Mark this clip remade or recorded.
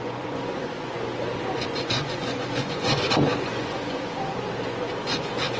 remade